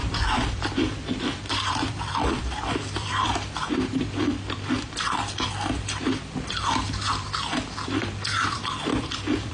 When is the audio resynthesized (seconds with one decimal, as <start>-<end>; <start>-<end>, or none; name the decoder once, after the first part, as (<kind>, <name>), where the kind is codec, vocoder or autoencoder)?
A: 0.0-9.5 (vocoder, BigVGAN v2)